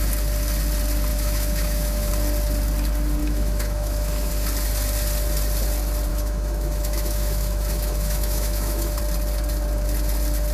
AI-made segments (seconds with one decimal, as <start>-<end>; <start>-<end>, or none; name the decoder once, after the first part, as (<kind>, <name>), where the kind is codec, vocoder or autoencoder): 1.1-2.1 (autoencoder, DAC-VAE); 3.2-4.3; 6.1-9.0